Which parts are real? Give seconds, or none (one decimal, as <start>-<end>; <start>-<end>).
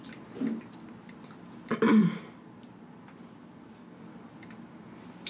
0.0-5.3